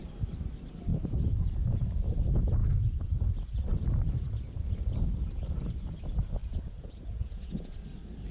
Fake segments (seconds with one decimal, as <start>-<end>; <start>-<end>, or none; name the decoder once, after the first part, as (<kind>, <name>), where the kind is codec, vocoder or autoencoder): 0.9-2.1 (vocoder, Vocos); 2.6-3.3; 6.4-7.7